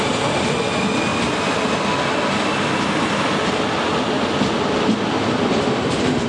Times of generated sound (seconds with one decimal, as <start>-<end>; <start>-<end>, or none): none